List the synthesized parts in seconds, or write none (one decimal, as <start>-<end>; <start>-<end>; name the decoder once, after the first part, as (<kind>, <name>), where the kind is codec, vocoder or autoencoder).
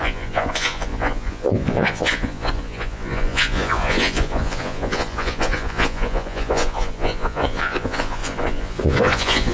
0.0-9.5 (vocoder, Vocos)